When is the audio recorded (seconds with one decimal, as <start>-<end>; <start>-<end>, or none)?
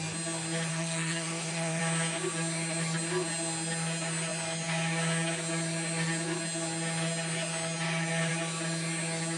0.0-0.7; 1.8-9.4